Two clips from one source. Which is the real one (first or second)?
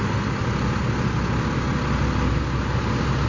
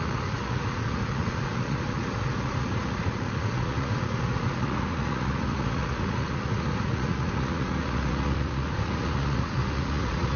first